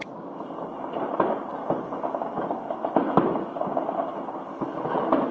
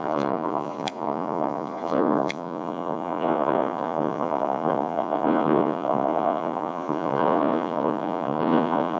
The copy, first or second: second